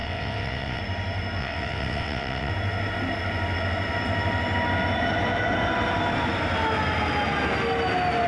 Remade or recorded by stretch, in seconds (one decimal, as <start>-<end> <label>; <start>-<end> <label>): 0.0-0.8 remade; 0.8-1.4 recorded; 1.4-2.5 remade; 2.5-8.3 recorded